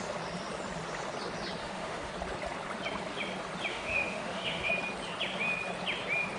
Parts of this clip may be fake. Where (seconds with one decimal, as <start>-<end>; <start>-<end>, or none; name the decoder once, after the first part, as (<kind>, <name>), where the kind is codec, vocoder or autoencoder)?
1.6-2.1 (autoencoder, DAC-VAE); 3.7-4.7